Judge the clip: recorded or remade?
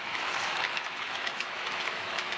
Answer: remade